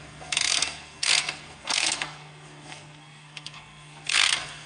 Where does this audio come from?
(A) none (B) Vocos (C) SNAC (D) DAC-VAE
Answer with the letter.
C